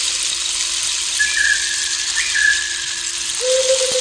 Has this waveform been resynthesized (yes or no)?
no